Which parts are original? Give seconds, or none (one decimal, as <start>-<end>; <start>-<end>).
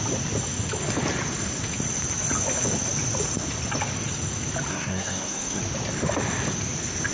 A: 0.0-4.7; 5.6-7.1